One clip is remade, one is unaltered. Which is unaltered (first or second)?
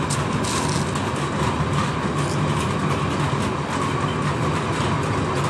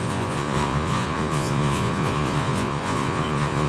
first